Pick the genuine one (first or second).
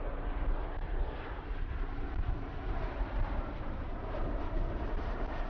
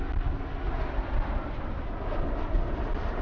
second